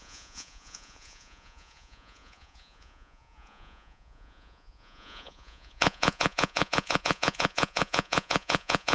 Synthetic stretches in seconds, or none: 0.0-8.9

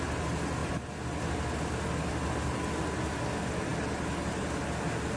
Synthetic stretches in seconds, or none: none

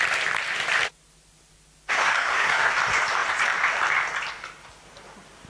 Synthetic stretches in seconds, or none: 2.0-2.7